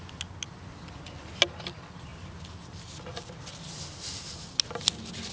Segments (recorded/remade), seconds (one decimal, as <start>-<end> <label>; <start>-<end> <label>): 0.0-5.3 recorded